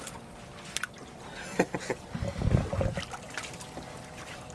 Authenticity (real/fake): real